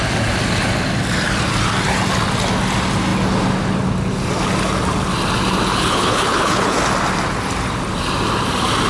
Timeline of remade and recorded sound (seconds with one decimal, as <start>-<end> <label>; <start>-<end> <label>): 0.0-5.7 recorded; 5.7-6.8 remade; 6.8-8.9 recorded